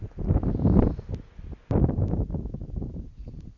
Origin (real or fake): real